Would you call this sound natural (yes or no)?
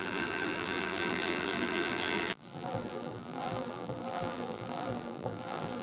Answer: no